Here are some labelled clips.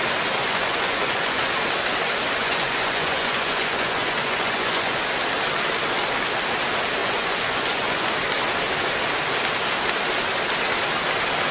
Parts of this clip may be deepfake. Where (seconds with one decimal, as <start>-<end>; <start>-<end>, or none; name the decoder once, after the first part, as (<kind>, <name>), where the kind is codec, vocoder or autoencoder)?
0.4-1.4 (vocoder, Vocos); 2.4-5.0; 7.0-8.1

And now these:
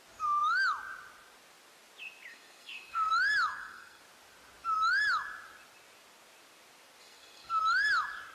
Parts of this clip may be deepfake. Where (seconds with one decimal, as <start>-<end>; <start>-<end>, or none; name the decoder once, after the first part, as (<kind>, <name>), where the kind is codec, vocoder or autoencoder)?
2.3-3.1 (codec, SNAC); 3.5-4.0; 7.0-7.6

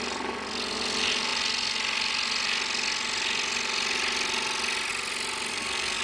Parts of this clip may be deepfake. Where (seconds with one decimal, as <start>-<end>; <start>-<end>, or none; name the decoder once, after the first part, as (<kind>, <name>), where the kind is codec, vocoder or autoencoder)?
5.5-6.0 (codec, SNAC)